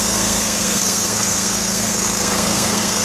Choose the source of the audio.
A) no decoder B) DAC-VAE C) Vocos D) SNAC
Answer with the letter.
D